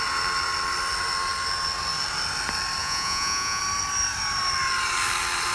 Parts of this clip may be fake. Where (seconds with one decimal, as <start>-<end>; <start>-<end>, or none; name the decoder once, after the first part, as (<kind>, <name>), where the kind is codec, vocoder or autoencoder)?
2.8-3.6 (vocoder, Vocos)